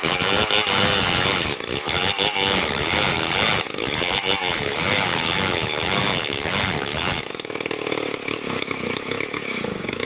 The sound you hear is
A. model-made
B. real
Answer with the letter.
A